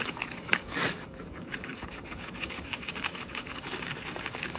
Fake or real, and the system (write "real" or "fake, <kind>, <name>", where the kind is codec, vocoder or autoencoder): fake, codec, DAC